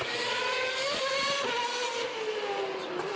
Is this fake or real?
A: real